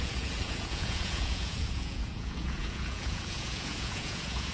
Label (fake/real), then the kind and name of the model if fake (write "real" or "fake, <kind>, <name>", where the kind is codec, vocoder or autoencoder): fake, vocoder, Vocos